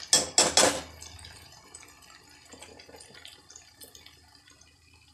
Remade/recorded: recorded